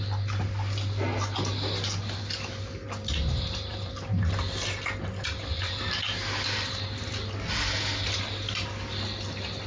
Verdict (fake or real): real